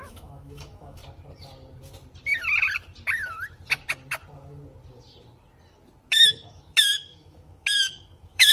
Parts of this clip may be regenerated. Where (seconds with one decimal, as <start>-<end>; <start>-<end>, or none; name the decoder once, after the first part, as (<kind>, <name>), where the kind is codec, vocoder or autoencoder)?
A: 0.0-1.0 (autoencoder, DAC-VAE); 6.1-8.5